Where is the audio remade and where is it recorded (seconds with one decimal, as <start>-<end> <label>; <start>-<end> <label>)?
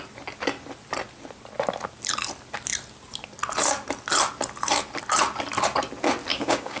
0.0-6.3 recorded; 6.3-6.8 remade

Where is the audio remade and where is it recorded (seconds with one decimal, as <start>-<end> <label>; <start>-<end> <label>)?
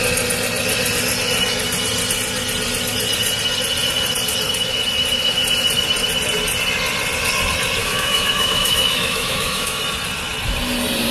0.0-7.8 recorded; 7.8-9.8 remade; 9.8-11.1 recorded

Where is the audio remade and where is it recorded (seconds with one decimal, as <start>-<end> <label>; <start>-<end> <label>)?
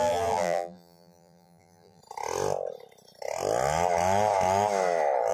0.0-2.0 remade; 2.0-5.3 recorded